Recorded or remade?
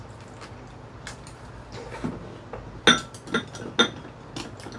recorded